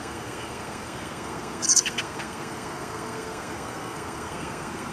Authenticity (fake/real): fake